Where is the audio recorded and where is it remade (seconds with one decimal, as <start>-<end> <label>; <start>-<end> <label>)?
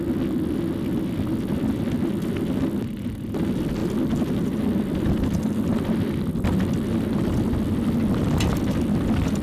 0.0-3.8 recorded; 3.8-8.6 remade; 8.6-9.4 recorded